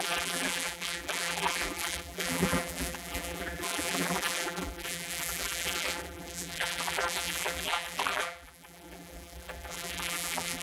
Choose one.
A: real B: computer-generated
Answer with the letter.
B